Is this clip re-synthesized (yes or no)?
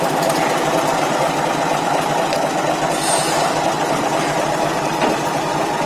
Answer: no